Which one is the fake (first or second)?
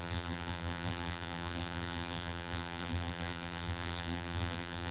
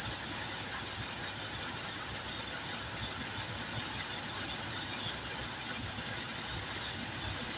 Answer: first